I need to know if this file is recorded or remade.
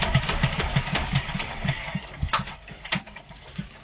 remade